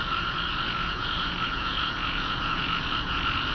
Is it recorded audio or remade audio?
remade